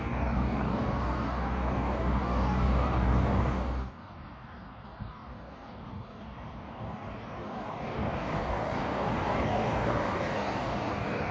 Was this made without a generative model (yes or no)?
no